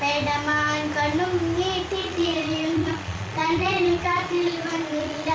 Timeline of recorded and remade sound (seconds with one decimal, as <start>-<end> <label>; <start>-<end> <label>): 0.0-2.0 recorded; 2.0-5.3 remade